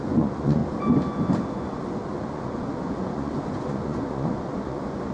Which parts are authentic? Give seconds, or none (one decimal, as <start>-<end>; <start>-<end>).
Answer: 0.6-1.5